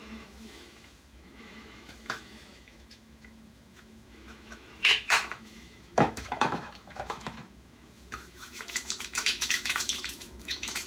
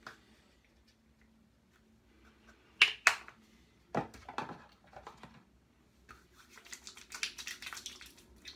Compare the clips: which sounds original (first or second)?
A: second